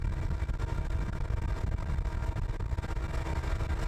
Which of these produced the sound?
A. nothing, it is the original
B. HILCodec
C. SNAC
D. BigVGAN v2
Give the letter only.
A